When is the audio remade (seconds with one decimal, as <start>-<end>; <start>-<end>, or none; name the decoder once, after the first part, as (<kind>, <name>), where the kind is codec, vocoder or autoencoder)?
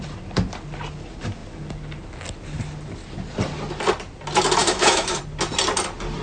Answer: 4.6-5.2 (autoencoder, DAC-VAE)